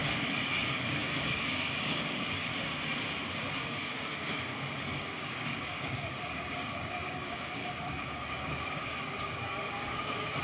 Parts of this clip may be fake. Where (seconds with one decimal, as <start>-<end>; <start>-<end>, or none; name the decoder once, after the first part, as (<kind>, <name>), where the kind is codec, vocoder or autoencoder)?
0.0-2.5 (codec, DAC); 3.6-10.4